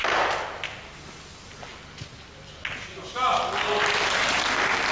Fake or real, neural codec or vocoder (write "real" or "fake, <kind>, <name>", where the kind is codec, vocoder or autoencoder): real